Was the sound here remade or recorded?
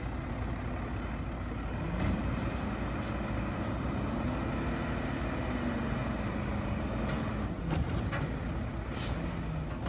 recorded